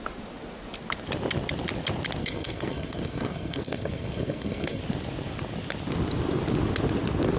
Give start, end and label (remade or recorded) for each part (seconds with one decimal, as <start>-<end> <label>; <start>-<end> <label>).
0.0-2.2 recorded; 2.2-4.8 remade; 4.8-7.4 recorded